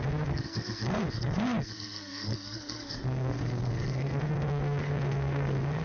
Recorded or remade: remade